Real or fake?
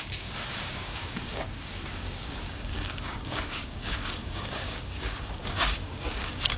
fake